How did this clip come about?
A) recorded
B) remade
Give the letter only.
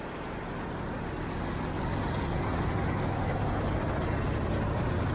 A